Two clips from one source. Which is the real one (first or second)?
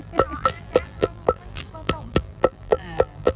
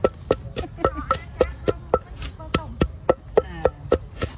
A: second